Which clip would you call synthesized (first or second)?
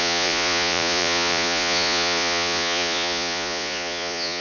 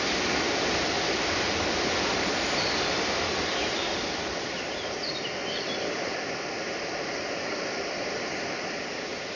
first